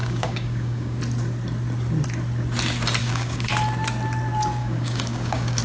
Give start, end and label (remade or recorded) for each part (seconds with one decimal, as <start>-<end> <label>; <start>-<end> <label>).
0.0-1.0 remade; 1.0-3.0 recorded; 3.0-3.5 remade; 3.5-4.6 recorded; 4.6-5.6 remade